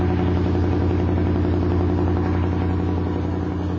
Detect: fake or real real